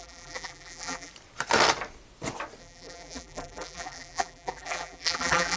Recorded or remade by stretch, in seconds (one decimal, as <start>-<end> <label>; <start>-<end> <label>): 0.0-1.1 remade; 1.1-2.6 recorded; 2.6-5.6 remade